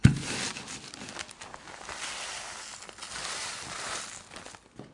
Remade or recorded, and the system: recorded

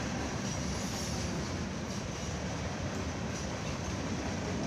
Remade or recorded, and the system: remade, vocoder, BigVGAN v2